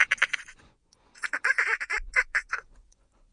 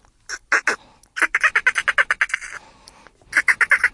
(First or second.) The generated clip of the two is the first